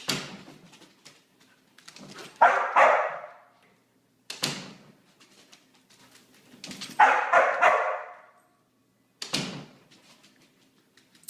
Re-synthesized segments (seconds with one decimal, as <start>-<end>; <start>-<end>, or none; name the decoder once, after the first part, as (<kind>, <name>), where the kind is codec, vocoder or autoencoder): none